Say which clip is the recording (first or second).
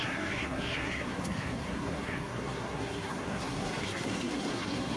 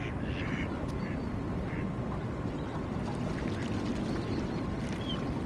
second